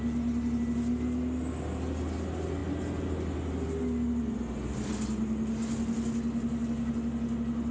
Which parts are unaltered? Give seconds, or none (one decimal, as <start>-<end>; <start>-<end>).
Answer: 0.0-7.7